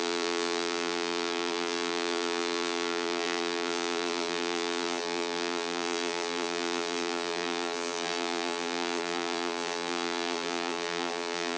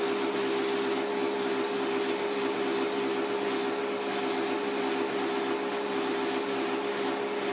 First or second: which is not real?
first